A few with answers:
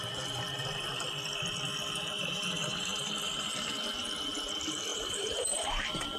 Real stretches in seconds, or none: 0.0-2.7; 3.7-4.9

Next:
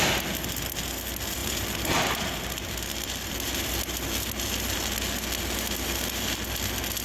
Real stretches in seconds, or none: 0.0-1.4; 3.7-7.0